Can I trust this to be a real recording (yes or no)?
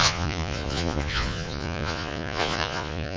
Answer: no